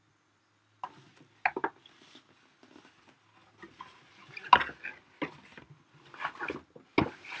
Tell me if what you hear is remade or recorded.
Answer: recorded